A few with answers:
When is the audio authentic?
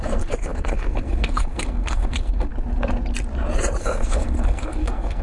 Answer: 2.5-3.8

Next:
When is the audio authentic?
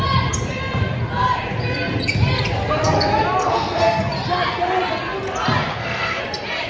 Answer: 0.0-3.4; 4.0-5.7; 6.2-6.7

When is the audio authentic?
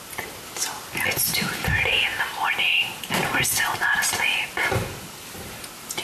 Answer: 0.0-6.0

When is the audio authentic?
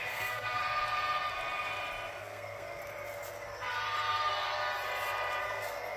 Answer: 0.6-2.1; 2.8-5.4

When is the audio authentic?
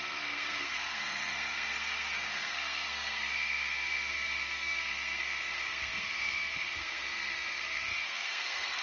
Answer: none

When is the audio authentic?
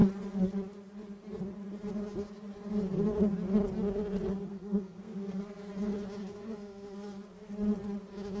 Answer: 0.0-4.5; 5.7-6.2; 7.5-8.4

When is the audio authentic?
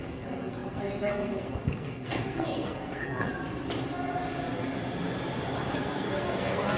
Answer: 3.3-5.7